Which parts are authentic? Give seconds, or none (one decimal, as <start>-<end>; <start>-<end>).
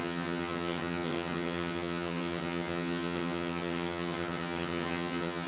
none